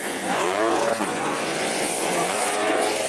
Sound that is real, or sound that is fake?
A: fake